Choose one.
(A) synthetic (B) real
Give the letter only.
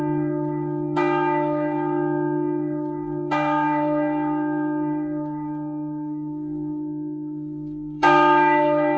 A